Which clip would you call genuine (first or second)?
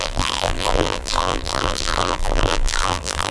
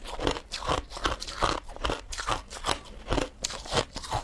second